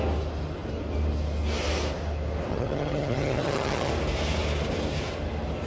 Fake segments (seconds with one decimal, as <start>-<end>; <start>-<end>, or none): 2.5-3.9